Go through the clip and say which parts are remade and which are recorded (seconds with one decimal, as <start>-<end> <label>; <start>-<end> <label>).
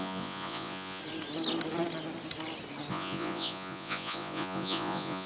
0.0-1.0 remade; 1.0-2.9 recorded; 2.9-5.3 remade